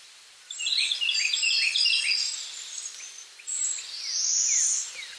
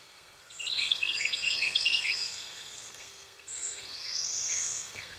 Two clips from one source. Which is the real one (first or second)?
first